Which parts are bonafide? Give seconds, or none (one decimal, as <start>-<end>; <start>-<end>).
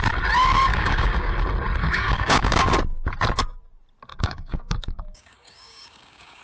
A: 0.0-0.7; 1.3-1.8; 2.7-4.1